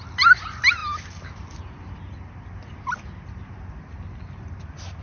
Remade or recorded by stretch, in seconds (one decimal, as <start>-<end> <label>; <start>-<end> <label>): 0.0-5.0 recorded